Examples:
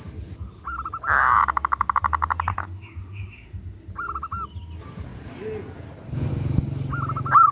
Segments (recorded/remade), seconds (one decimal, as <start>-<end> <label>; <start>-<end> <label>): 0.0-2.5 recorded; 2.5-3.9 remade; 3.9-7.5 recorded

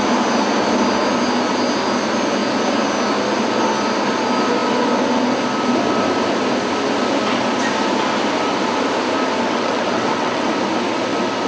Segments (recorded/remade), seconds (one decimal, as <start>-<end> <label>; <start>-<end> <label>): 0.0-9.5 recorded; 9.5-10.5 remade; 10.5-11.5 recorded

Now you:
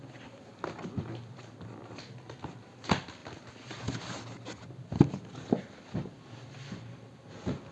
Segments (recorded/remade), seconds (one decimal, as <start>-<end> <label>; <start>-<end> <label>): 0.0-7.7 recorded